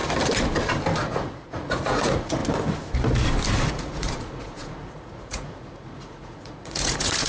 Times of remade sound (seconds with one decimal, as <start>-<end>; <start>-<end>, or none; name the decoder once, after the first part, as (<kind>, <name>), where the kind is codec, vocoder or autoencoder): 1.0-2.4 (vocoder, Vocos); 3.7-7.3